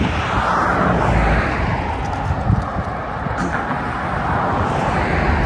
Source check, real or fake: real